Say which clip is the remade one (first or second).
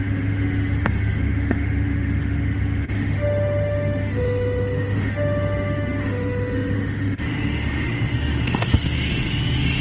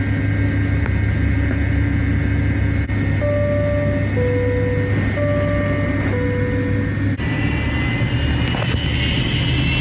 first